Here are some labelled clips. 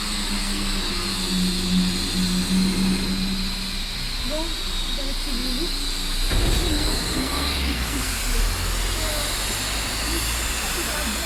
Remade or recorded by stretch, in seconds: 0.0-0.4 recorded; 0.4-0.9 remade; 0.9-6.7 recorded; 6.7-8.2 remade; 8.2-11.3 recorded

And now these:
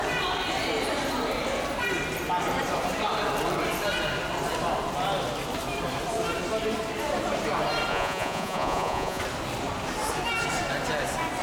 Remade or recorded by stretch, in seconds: 0.0-7.9 recorded; 7.9-9.2 remade; 9.2-11.4 recorded

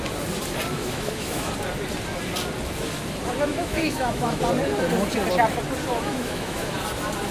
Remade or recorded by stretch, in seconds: 0.0-0.7 recorded; 0.7-1.5 remade; 1.5-3.5 recorded; 3.5-4.4 remade; 4.4-5.9 recorded; 5.9-6.7 remade; 6.7-7.3 recorded

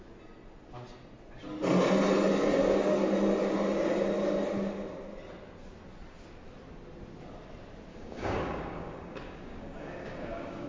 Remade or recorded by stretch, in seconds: 0.0-7.9 recorded; 7.9-10.7 remade

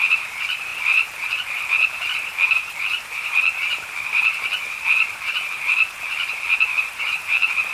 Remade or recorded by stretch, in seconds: 0.0-7.7 remade